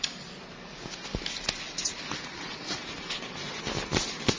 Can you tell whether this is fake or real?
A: real